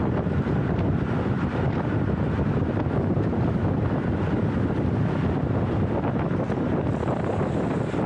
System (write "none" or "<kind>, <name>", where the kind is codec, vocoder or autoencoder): none